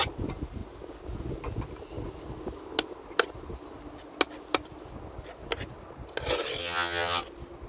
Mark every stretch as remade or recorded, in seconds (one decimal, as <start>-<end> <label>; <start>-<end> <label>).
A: 0.0-6.6 recorded; 6.6-7.2 remade; 7.2-7.7 recorded